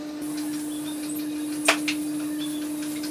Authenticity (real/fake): real